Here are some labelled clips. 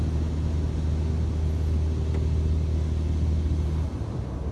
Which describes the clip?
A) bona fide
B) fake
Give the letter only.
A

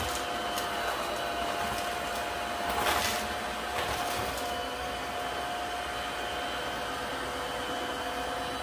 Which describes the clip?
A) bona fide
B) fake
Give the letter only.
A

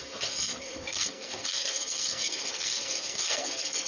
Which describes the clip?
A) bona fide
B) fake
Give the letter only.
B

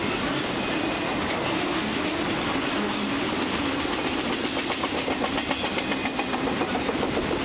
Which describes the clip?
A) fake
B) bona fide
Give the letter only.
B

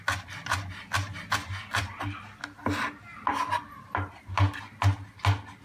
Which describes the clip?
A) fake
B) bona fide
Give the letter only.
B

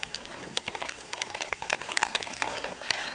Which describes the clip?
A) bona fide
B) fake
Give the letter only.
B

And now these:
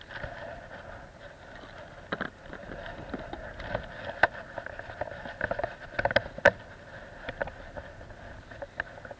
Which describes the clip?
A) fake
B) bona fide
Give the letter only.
B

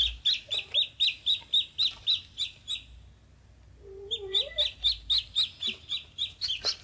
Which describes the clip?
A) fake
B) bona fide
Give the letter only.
B